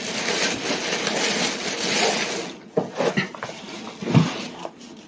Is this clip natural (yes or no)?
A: yes